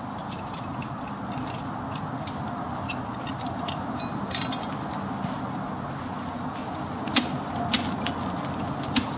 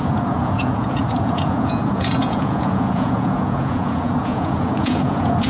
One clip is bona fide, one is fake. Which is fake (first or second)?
second